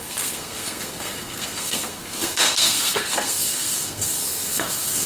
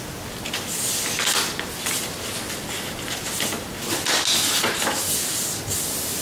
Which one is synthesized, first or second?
first